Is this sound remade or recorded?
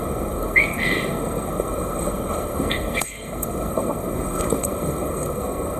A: remade